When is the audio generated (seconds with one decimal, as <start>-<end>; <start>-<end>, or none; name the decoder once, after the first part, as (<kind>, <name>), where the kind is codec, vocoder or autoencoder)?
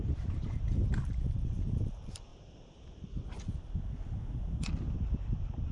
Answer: 0.0-2.3 (vocoder, BigVGAN v2)